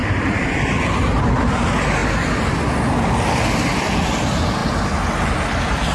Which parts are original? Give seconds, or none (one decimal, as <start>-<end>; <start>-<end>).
0.8-5.9